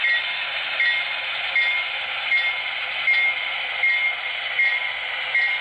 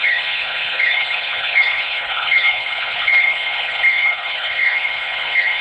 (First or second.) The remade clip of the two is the second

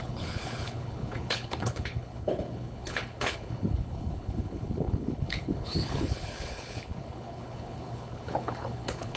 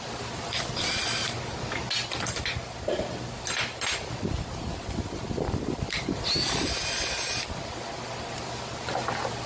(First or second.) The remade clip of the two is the first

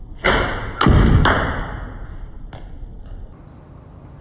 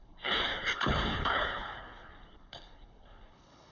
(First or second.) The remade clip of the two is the second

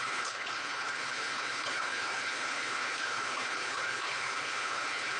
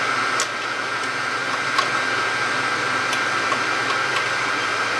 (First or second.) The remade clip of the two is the first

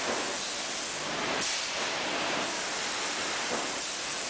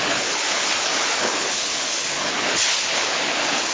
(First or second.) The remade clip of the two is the second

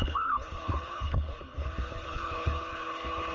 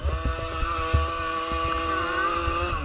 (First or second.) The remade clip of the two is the first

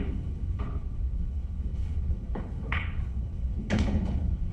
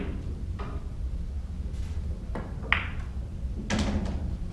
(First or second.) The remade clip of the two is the first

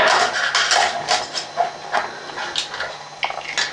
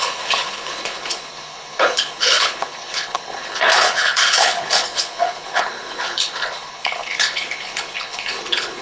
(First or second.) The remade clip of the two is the second